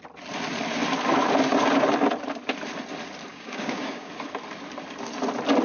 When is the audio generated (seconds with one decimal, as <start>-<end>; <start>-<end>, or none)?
3.3-4.1